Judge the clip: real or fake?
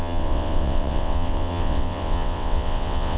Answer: fake